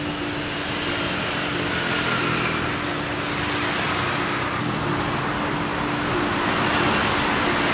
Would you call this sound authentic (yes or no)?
yes